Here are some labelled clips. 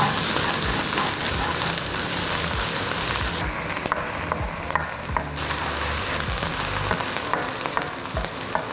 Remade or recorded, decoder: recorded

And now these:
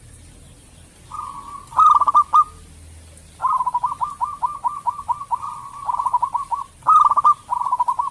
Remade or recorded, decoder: recorded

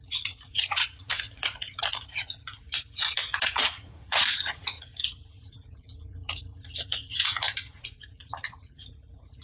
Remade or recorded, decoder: remade, vocoder, Vocos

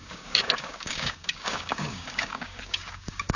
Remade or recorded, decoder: remade, codec, DAC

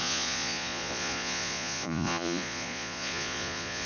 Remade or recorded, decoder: remade, vocoder, Vocos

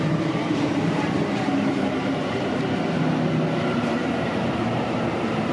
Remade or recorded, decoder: remade, vocoder, BigVGAN v2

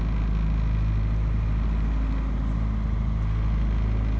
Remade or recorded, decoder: recorded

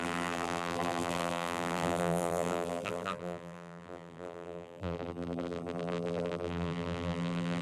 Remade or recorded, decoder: remade, vocoder, BigVGAN v2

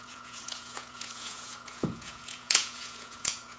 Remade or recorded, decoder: remade, vocoder, Vocos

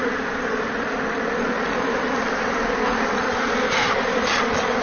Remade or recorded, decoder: remade, vocoder, BigVGAN v2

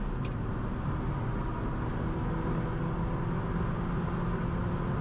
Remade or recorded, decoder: recorded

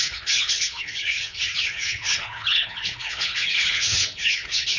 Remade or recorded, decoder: remade, codec, HILCodec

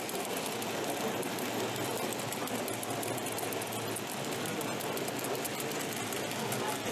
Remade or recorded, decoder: recorded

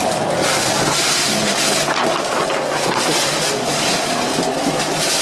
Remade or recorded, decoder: recorded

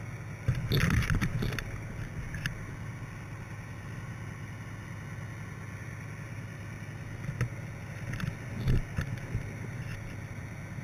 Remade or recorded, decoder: recorded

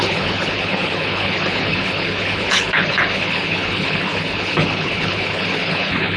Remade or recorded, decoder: remade, codec, HILCodec